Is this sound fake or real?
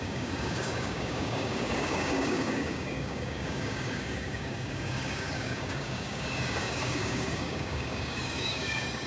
fake